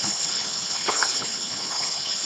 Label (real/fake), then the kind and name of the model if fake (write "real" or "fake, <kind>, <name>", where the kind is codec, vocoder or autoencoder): fake, codec, HILCodec